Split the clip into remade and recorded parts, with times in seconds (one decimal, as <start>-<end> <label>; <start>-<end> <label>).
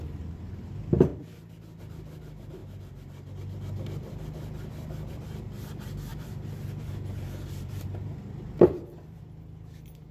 0.0-6.1 recorded; 6.1-9.2 remade; 9.2-10.1 recorded